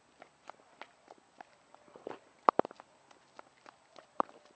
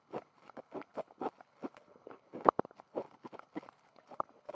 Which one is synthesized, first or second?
second